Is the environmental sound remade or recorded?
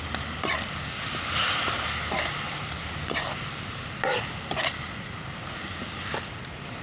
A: recorded